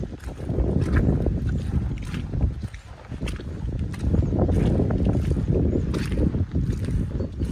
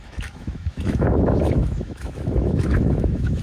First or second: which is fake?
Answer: second